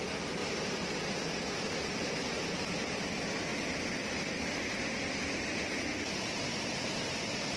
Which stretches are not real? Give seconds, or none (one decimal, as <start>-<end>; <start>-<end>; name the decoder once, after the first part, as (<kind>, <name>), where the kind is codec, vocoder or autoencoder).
none